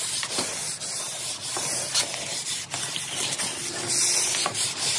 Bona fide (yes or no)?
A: yes